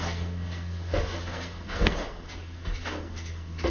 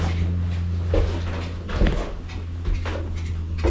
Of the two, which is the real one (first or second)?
second